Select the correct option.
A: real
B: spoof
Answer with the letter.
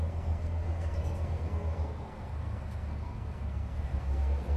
B